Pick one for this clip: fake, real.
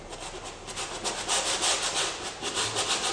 real